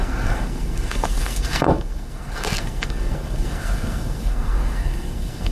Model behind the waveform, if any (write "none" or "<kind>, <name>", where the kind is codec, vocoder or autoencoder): codec, SNAC